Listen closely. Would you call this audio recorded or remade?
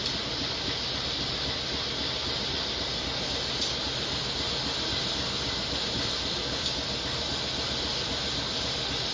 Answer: recorded